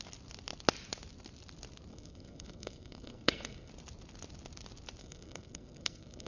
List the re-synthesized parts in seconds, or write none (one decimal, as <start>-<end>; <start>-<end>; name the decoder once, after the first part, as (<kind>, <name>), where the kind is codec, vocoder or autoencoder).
1.9-3.7 (codec, SNAC); 5.0-6.3